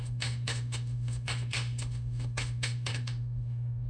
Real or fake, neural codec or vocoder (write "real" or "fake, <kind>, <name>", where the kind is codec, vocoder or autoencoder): fake, autoencoder, DAC-VAE